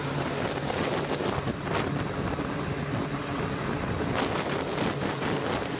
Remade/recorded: recorded